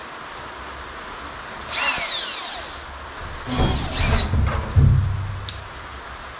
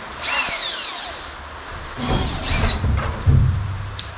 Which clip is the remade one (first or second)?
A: second